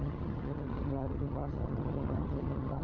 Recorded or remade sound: remade